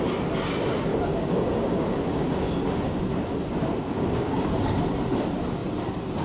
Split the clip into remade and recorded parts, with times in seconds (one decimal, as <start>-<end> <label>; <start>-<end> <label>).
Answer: 0.0-0.9 recorded; 0.9-3.0 remade; 3.0-3.8 recorded; 3.8-4.3 remade; 4.3-6.2 recorded